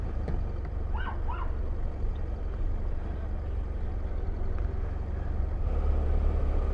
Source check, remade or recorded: recorded